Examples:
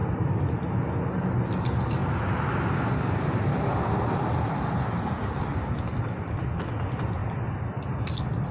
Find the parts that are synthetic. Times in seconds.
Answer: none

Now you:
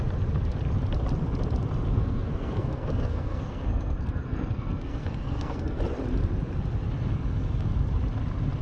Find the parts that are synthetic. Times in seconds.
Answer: 1.9-5.8 (codec, SNAC)